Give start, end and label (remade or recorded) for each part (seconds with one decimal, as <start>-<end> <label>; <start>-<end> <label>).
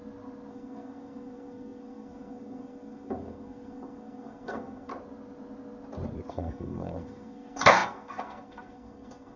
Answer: 0.0-0.5 recorded; 0.5-4.9 remade; 4.9-6.3 recorded; 6.3-9.4 remade